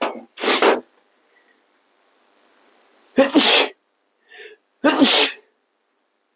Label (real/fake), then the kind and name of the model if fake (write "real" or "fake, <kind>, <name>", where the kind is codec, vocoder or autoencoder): real